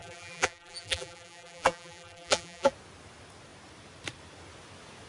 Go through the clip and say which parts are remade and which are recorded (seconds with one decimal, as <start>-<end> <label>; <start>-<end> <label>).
0.0-2.7 remade; 2.7-5.1 recorded

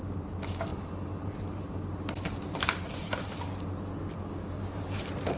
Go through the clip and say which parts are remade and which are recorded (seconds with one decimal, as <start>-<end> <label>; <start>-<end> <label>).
0.0-3.9 remade; 3.9-4.5 recorded; 4.5-5.4 remade

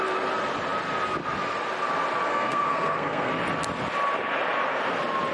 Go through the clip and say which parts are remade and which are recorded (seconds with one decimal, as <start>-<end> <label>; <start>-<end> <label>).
0.0-2.3 recorded; 2.3-3.3 remade; 3.3-5.3 recorded

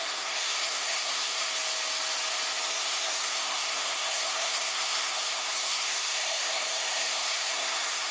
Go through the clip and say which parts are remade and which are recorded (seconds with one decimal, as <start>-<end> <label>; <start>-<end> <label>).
0.0-1.5 remade; 1.5-2.7 recorded; 2.7-8.1 remade

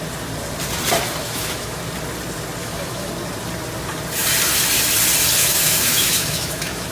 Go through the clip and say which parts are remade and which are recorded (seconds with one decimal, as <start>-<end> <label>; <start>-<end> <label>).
0.0-1.2 recorded; 1.2-1.8 remade; 1.8-2.6 recorded; 2.6-3.1 remade; 3.1-5.4 recorded; 5.4-6.9 remade